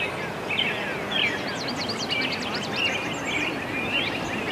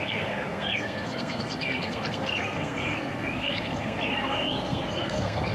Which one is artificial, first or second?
second